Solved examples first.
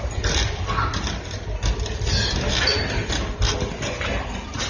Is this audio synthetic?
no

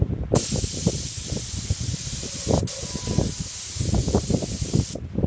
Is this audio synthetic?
no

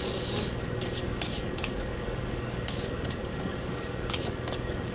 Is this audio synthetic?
yes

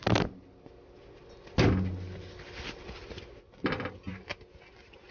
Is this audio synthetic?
no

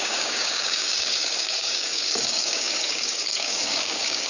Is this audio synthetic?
yes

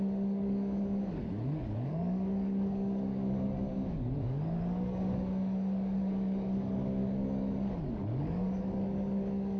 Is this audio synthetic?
yes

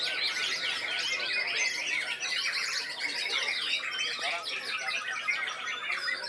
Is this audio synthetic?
no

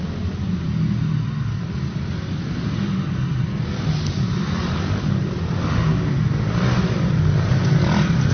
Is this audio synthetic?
no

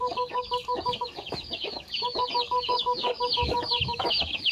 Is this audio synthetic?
yes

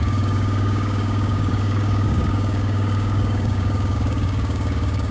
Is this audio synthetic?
yes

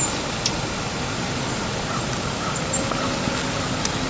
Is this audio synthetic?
no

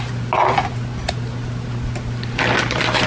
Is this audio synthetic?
no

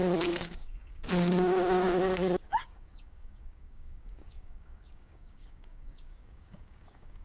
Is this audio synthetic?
yes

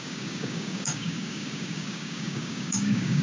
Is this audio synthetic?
yes